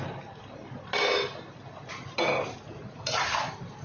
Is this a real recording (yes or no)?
yes